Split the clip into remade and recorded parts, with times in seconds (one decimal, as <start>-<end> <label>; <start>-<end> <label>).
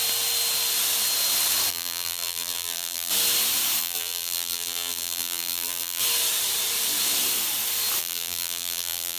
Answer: 0.0-1.7 recorded; 1.7-3.1 remade; 3.1-3.8 recorded; 3.8-6.0 remade; 6.0-8.0 recorded; 8.0-9.2 remade